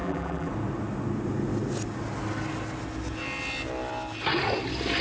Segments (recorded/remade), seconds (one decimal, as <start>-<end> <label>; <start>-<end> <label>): 0.0-0.5 remade; 0.5-5.0 recorded